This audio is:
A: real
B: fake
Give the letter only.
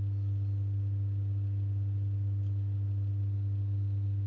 A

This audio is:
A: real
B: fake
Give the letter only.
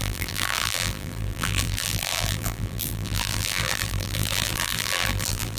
B